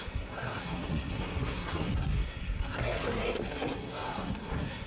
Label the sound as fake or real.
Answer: fake